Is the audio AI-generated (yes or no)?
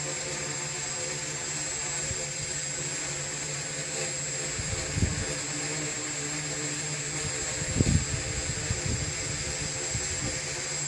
no